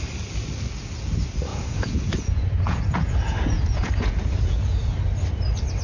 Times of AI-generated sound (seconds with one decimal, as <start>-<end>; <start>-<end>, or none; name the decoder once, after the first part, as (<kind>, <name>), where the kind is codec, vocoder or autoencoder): 1.5-4.9 (vocoder, Vocos)